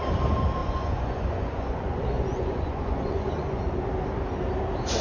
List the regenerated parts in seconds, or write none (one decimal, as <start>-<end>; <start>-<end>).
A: 0.6-3.6